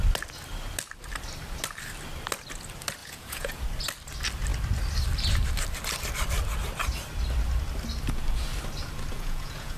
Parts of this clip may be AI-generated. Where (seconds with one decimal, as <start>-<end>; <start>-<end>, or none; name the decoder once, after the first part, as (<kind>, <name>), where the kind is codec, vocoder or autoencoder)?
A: 3.0-3.6 (vocoder, Vocos); 9.1-9.8